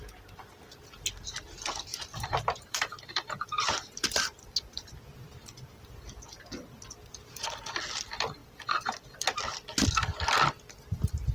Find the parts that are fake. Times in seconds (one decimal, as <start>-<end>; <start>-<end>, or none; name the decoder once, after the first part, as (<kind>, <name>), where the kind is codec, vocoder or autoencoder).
1.9-4.8 (vocoder, BigVGAN v2)